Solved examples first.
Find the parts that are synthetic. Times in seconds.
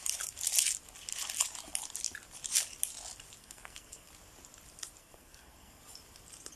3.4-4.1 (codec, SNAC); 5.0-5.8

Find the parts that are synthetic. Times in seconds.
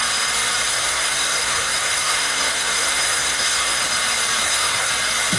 0.7-3.8 (codec, SNAC); 4.4-4.9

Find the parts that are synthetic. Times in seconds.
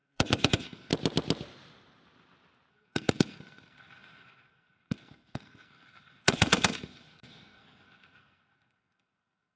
0.0-0.9 (codec, SNAC); 2.7-9.6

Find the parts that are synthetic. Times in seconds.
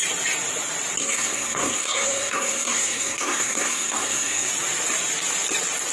1.0-4.5 (codec, SNAC)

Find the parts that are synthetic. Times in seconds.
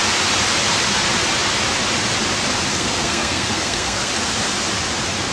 2.7-4.1 (codec, SNAC)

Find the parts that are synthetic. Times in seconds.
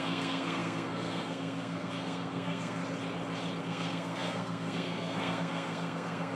0.0-2.8 (codec, SNAC); 3.6-6.4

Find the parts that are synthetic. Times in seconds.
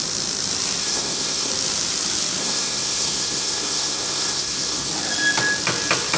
0.8-1.5 (codec, SNAC); 2.4-4.9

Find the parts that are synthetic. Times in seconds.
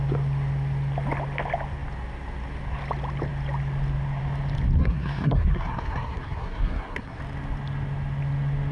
4.8-7.2 (codec, SNAC)